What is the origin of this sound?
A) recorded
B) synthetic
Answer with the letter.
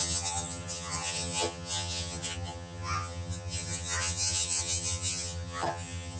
B